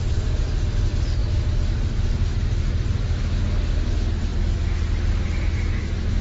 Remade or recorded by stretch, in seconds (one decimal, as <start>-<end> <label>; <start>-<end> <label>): 0.0-6.2 recorded